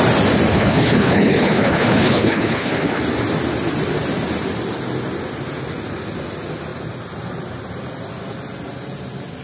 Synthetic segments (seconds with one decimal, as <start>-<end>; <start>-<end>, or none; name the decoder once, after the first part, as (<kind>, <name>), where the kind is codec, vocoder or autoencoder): 0.5-3.0 (codec, HILCodec)